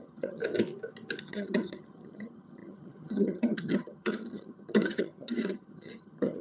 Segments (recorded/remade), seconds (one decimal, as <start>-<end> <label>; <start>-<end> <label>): 0.0-0.4 remade; 0.4-1.2 recorded; 1.2-6.4 remade